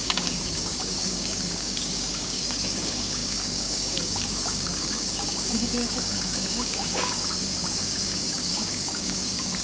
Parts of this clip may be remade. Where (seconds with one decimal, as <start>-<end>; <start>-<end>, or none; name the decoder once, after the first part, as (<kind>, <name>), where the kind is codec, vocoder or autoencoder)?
0.0-9.6 (codec, DAC)